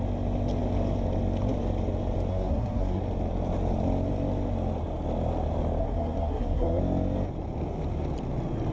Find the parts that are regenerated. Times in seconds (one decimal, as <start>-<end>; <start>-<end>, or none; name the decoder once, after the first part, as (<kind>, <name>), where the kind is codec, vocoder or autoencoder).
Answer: 2.3-3.0 (codec, SNAC); 5.8-6.8